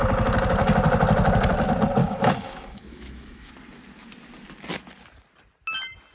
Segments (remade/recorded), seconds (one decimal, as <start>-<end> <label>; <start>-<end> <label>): 0.0-2.0 recorded; 2.0-3.5 remade; 3.5-6.1 recorded